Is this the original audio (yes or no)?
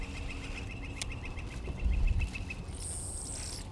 yes